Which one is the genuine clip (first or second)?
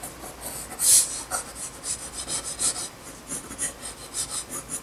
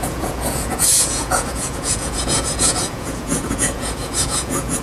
first